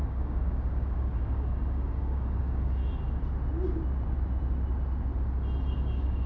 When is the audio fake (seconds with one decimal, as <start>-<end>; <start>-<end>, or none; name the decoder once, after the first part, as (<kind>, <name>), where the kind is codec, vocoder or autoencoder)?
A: 0.0-2.8 (codec, DAC); 5.7-6.3